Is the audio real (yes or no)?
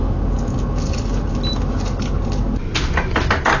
yes